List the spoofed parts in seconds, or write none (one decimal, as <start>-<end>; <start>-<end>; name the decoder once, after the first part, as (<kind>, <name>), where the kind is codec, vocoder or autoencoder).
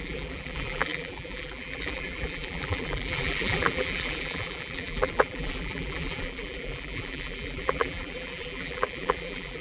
0.0-9.6 (vocoder, BigVGAN v2)